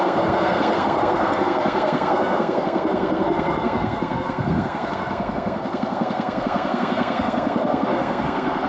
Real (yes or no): no